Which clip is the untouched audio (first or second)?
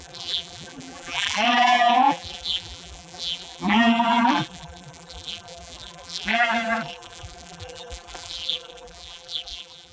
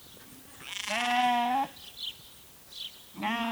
second